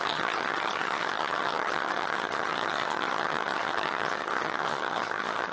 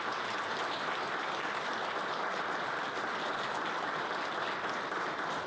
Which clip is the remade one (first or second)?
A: first